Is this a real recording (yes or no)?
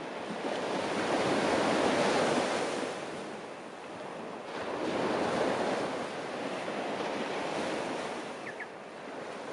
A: yes